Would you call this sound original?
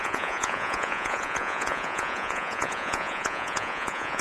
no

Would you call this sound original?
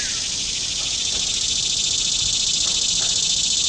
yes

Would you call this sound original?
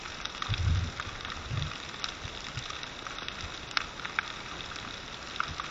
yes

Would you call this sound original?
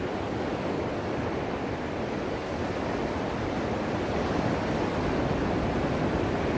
yes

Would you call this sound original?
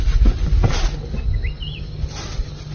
yes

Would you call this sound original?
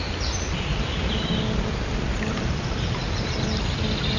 yes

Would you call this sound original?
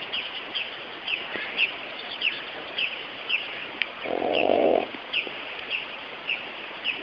no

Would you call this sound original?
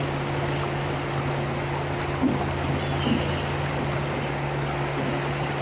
yes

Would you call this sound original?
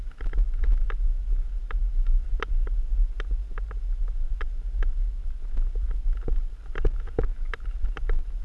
yes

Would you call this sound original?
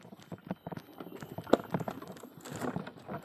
yes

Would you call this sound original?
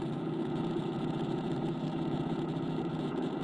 no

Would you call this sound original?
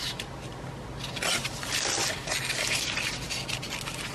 yes